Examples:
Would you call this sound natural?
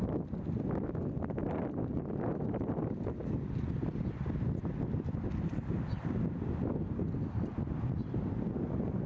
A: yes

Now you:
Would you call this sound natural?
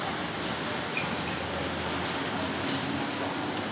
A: yes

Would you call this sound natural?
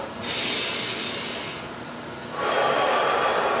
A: yes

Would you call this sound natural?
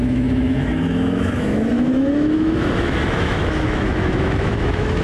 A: no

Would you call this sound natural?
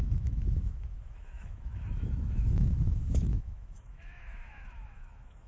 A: no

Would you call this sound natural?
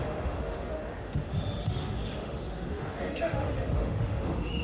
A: no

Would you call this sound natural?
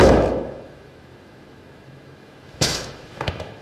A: no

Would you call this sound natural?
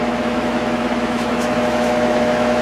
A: no